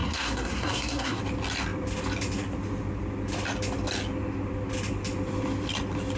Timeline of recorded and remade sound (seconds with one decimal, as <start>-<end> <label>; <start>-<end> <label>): 0.0-1.2 remade; 1.2-6.2 recorded